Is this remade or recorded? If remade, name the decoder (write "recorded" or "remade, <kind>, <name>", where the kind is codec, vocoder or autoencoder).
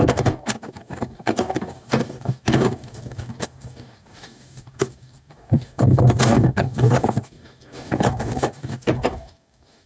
remade, codec, DAC